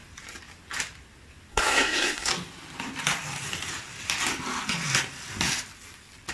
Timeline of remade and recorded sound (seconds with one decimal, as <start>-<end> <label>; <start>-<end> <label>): 0.0-1.5 recorded; 1.5-2.3 remade; 2.3-6.3 recorded